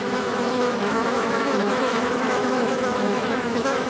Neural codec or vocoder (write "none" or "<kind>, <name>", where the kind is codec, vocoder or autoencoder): autoencoder, DAC-VAE